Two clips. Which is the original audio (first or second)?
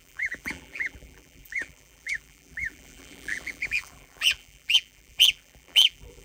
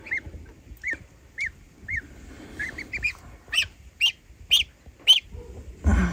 second